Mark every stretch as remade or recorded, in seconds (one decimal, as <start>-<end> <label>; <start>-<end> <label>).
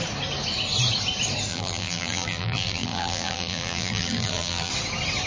0.0-1.5 recorded; 1.5-4.7 remade; 4.7-5.3 recorded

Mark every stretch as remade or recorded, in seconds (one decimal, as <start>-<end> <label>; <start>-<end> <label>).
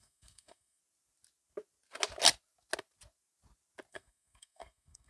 0.0-0.8 remade; 0.8-3.9 recorded; 3.9-5.1 remade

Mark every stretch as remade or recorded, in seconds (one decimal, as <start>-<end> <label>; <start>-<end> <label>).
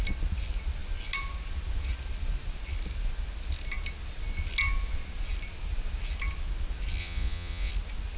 0.0-7.0 recorded; 7.0-7.7 remade; 7.7-8.2 recorded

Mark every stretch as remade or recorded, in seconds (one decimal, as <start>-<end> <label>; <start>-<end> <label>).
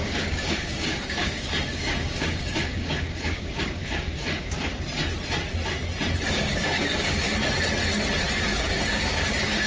0.0-4.7 remade; 4.7-6.3 recorded; 6.3-7.4 remade; 7.4-8.5 recorded; 8.5-9.7 remade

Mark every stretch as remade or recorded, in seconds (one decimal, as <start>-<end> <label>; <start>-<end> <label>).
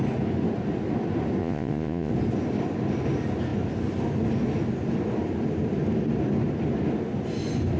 0.0-1.4 recorded; 1.4-2.1 remade; 2.1-7.8 recorded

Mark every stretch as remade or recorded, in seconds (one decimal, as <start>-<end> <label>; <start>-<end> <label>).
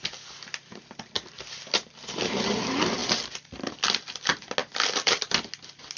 0.0-6.0 recorded